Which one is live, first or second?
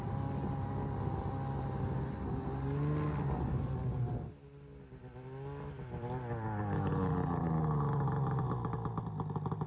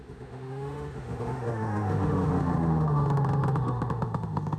first